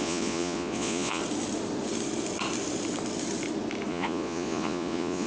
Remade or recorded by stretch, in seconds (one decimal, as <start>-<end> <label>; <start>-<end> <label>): 0.0-1.2 remade; 1.2-3.9 recorded; 3.9-5.3 remade